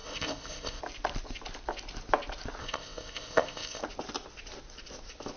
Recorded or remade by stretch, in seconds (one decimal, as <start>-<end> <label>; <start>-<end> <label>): 0.0-0.8 remade; 0.8-2.6 recorded; 2.6-3.8 remade; 3.8-5.4 recorded

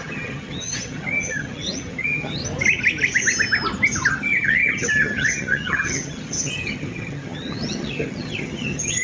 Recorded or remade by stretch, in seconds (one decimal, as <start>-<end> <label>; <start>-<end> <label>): 0.0-2.4 remade; 2.4-4.1 recorded; 4.1-9.0 remade

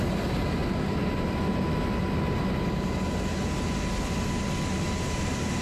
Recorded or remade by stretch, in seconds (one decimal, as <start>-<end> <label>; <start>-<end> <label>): 0.0-5.6 recorded

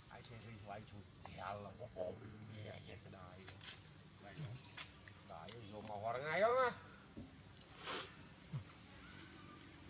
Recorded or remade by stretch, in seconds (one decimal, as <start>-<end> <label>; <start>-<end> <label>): 0.0-1.7 recorded; 1.7-3.0 remade; 3.0-9.9 recorded

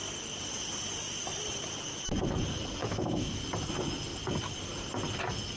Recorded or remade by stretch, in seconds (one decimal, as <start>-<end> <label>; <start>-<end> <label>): 0.0-2.8 recorded; 2.8-3.4 remade; 3.4-5.6 recorded

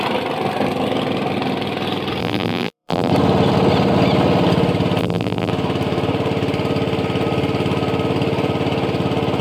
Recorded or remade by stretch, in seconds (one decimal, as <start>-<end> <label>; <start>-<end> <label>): 0.0-2.2 recorded; 2.2-3.1 remade; 3.1-5.0 recorded; 5.0-5.5 remade; 5.5-9.4 recorded

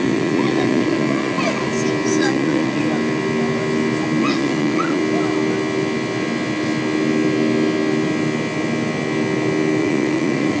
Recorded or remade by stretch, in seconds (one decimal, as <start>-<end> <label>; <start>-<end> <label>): 0.0-1.7 remade; 1.7-2.2 recorded; 2.2-2.8 remade; 2.8-4.2 recorded; 4.2-5.0 remade; 5.0-9.8 recorded; 9.8-10.6 remade

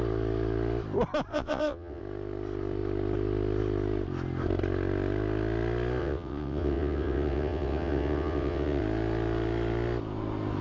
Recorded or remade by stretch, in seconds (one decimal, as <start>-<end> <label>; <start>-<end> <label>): 0.0-1.3 recorded; 1.3-2.0 remade; 2.0-6.0 recorded; 6.0-8.8 remade; 8.8-10.6 recorded